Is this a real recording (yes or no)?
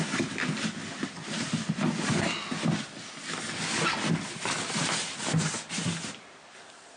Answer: yes